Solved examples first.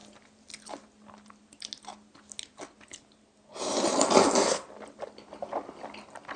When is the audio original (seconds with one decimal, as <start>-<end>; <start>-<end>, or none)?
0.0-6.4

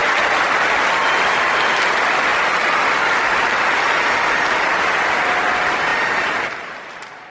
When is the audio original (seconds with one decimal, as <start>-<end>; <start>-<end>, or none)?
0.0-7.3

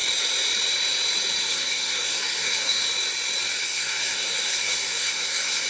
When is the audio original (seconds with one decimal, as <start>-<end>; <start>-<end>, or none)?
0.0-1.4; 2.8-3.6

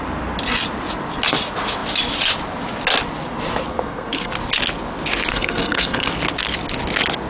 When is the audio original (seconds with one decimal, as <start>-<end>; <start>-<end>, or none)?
0.0-3.7; 4.3-5.3; 6.1-7.3

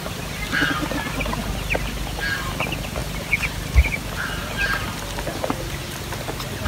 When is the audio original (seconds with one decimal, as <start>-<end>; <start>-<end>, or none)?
0.0-6.7